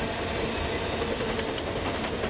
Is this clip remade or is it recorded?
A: recorded